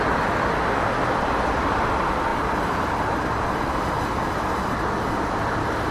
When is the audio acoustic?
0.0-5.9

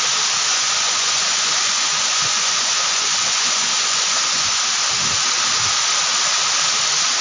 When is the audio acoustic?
0.0-0.5; 4.6-7.2

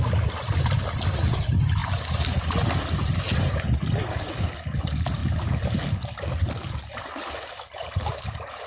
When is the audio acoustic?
0.0-8.7

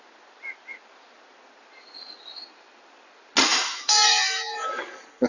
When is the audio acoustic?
0.0-3.5; 4.8-5.3

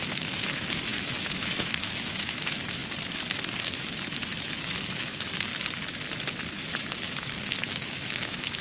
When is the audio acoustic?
2.8-3.6; 5.5-6.5